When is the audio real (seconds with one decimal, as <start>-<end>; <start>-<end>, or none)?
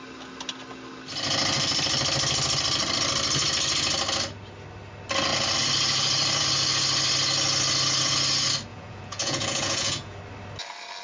0.0-8.7; 10.2-11.0